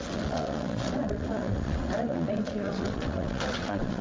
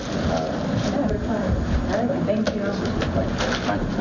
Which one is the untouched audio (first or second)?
second